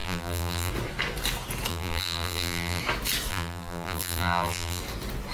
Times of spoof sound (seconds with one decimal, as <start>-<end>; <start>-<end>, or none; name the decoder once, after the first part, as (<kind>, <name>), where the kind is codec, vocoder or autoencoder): 0.0-0.7 (vocoder, BigVGAN v2); 1.7-2.8; 3.3-4.8